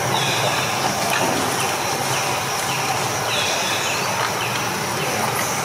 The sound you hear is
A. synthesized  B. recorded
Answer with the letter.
B